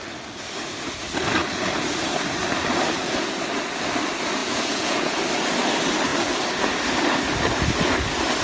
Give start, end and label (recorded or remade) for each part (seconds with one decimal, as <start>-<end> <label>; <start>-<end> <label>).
0.0-4.4 recorded; 4.4-5.2 remade; 5.2-8.4 recorded